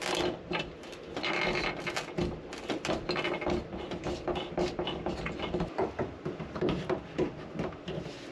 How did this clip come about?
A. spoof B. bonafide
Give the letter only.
B